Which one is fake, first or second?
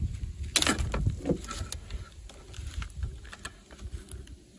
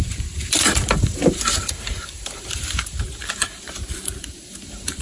second